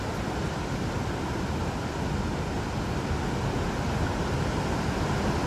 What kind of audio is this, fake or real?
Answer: real